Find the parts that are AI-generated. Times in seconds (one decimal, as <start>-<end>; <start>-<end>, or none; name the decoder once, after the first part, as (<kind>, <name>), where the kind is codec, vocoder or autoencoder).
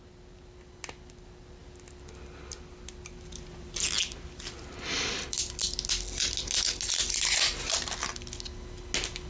none